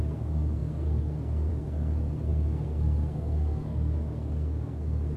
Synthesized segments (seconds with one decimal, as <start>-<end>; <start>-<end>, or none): 0.0-5.2